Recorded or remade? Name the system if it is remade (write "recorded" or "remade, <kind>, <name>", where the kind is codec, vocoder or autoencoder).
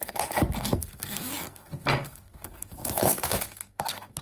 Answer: remade, codec, SNAC